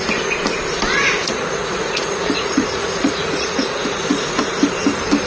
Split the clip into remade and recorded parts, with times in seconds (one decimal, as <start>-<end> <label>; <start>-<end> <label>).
0.0-1.2 recorded; 1.2-4.4 remade; 4.4-5.3 recorded